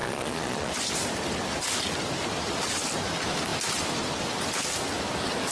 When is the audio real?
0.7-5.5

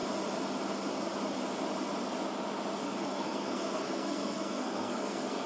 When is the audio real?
0.0-2.8

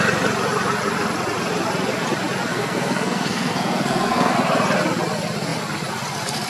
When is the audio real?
0.0-2.5; 4.3-6.5

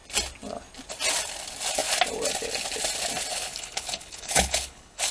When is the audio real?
0.0-3.3

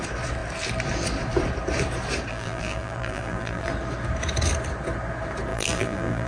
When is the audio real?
0.0-2.3; 3.7-5.5

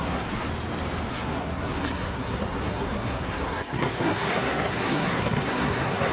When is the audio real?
0.5-1.1

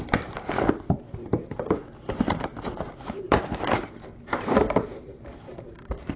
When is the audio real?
none